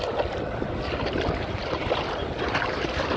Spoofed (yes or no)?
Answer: no